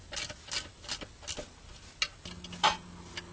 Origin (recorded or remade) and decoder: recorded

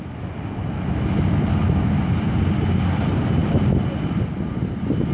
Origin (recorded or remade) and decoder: recorded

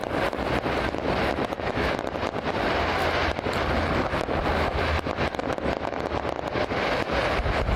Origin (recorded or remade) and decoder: recorded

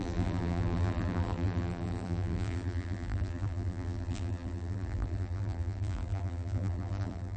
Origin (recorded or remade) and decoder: remade, vocoder, BigVGAN v2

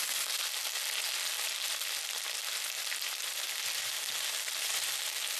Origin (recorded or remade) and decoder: recorded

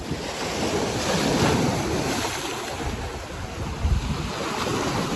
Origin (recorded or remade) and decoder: recorded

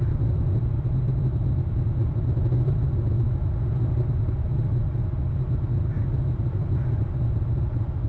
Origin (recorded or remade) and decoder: recorded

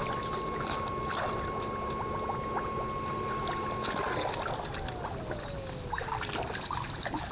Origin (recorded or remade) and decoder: recorded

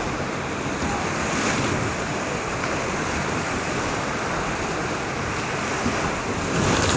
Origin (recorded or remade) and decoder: remade, vocoder, BigVGAN v2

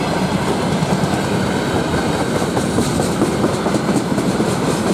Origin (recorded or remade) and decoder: recorded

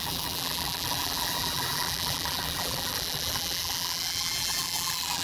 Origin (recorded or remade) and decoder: remade, vocoder, BigVGAN v2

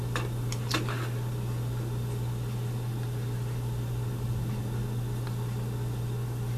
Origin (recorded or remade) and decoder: recorded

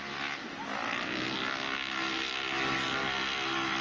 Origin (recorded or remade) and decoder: recorded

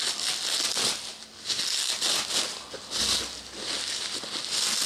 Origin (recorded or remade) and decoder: recorded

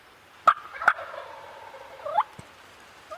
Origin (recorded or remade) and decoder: recorded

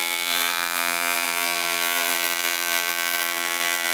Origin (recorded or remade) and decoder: remade, vocoder, BigVGAN v2